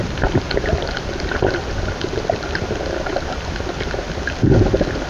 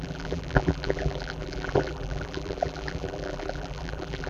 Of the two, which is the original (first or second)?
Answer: first